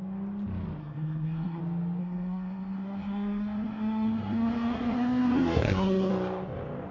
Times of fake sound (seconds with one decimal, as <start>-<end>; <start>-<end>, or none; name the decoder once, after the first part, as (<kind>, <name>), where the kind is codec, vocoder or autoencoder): 0.8-1.6 (codec, SNAC); 2.0-6.1

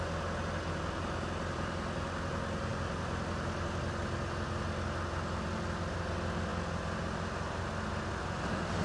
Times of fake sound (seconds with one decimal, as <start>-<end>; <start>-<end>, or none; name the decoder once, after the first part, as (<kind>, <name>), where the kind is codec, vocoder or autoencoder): none

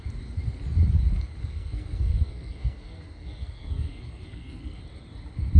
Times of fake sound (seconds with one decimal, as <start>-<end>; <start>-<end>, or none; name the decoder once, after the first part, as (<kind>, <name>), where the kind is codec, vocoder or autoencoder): 1.4-4.8 (codec, SNAC)

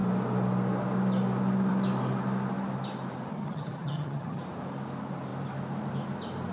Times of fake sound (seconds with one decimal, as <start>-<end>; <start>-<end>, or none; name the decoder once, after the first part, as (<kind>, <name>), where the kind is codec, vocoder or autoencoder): 3.3-4.4 (vocoder, HiFi-GAN)